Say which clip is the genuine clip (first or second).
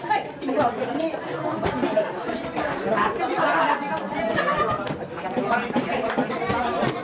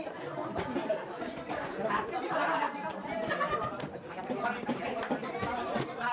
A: first